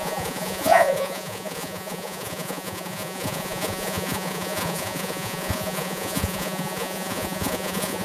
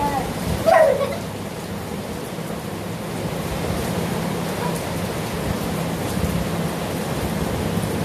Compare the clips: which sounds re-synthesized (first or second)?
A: first